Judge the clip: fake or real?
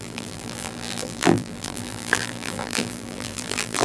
fake